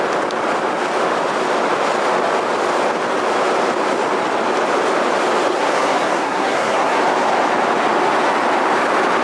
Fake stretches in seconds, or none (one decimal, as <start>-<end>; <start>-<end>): 5.5-7.0